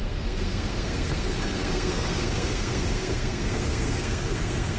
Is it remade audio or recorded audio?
remade